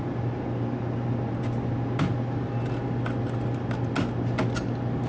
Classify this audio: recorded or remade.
recorded